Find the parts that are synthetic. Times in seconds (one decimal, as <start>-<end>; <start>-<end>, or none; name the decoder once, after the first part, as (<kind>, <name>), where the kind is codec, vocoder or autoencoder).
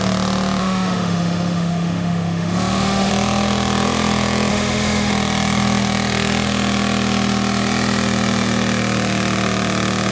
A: 0.6-3.1 (autoencoder, DAC-VAE); 4.5-5.1